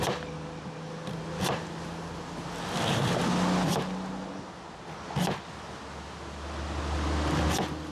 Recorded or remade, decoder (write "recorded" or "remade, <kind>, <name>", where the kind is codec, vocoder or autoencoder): recorded